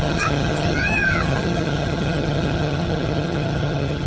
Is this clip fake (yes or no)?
yes